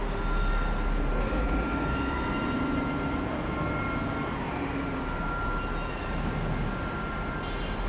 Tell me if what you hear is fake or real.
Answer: real